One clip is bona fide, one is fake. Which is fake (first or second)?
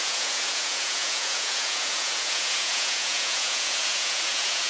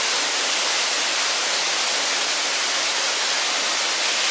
first